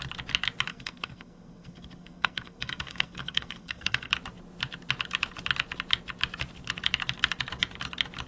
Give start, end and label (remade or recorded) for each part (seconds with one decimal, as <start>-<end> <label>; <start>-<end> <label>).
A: 0.0-0.7 recorded; 0.7-4.1 remade; 4.1-8.3 recorded